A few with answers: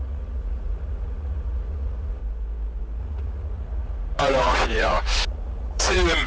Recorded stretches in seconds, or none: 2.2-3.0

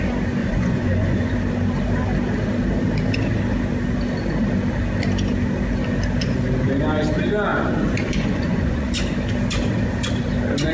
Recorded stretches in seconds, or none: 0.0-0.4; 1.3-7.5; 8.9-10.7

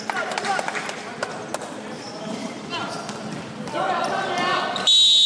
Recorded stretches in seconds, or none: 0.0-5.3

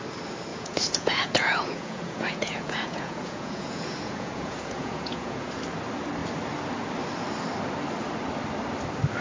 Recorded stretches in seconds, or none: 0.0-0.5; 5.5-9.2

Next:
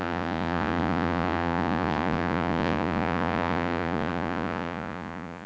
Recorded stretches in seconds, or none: none

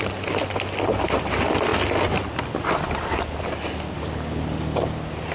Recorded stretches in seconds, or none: 0.0-5.3